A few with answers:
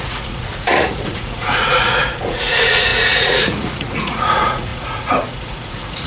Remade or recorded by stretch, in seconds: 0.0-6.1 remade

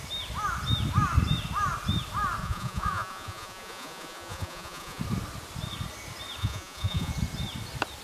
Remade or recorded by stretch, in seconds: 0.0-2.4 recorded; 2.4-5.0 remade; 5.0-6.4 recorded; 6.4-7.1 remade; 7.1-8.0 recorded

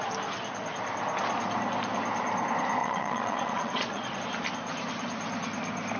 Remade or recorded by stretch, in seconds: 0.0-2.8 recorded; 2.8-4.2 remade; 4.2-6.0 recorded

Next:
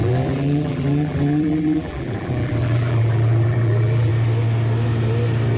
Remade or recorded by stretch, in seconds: 0.0-4.1 remade; 4.1-5.6 recorded

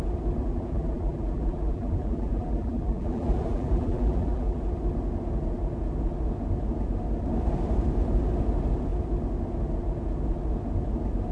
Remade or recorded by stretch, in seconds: 0.0-0.4 recorded; 0.4-4.6 remade; 4.6-11.3 recorded

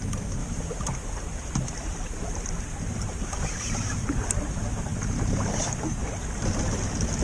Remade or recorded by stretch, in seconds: 0.0-7.2 recorded

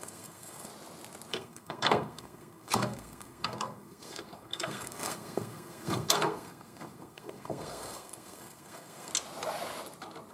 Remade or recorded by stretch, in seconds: 0.0-0.7 remade; 0.7-1.3 recorded; 1.3-9.1 remade; 9.1-10.3 recorded